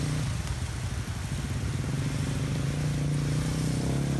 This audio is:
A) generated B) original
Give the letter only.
B